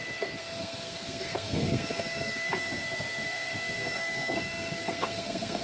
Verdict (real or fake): fake